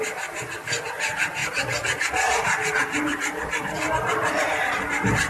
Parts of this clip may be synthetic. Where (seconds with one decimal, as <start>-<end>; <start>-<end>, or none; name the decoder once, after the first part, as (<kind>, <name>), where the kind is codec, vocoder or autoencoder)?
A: none